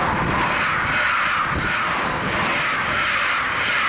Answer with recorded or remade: recorded